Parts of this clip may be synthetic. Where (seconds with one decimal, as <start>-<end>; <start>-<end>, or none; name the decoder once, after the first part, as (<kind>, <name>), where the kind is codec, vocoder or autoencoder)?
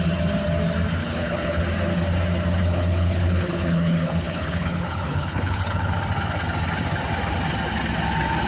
1.0-1.6 (codec, HILCodec); 2.6-5.9